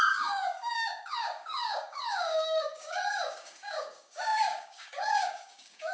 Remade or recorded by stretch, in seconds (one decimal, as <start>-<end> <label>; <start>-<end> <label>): 0.0-5.9 remade